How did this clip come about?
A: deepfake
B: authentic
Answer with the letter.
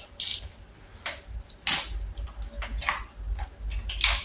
B